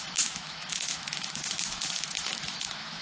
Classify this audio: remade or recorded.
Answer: remade